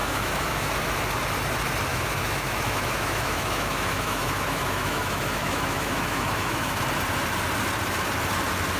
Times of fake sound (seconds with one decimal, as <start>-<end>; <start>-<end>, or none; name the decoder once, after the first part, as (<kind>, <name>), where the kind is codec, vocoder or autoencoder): 0.0-0.7 (autoencoder, DAC-VAE); 1.9-6.8